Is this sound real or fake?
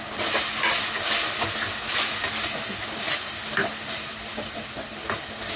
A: real